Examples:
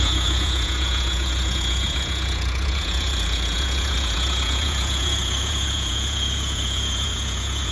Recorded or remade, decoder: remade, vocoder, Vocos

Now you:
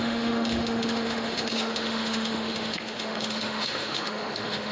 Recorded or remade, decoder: remade, autoencoder, DAC-VAE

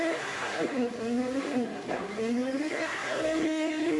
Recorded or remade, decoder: remade, codec, SNAC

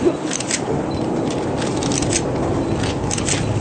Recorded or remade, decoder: recorded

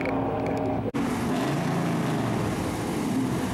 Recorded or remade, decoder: recorded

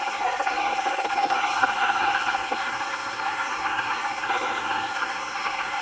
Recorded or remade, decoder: remade, codec, SNAC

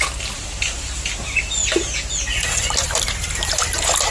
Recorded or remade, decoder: recorded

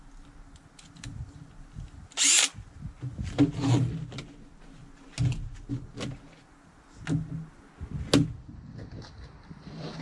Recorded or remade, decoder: recorded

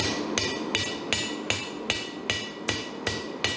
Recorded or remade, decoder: recorded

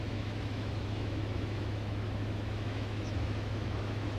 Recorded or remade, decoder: remade, autoencoder, DAC-VAE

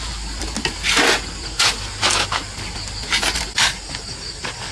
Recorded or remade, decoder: recorded